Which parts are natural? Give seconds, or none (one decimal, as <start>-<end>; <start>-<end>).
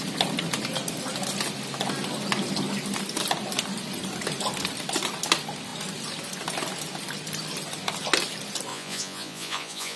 0.0-8.7